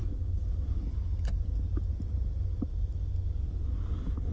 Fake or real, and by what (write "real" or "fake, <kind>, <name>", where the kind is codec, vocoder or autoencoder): real